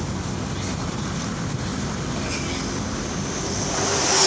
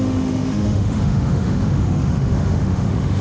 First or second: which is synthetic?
second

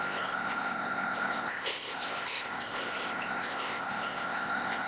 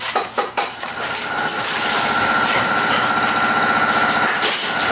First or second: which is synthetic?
first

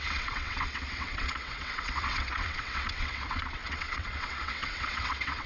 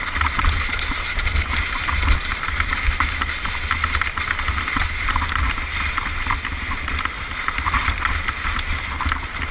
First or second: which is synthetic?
first